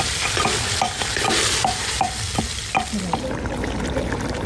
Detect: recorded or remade recorded